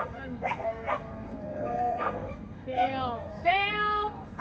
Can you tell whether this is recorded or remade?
remade